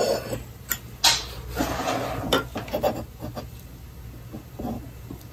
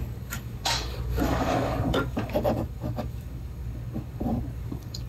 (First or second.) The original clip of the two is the first